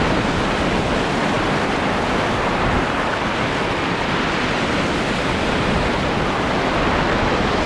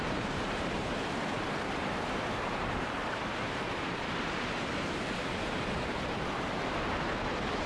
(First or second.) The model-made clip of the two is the second